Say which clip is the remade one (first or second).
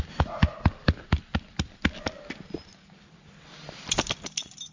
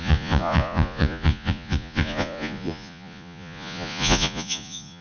second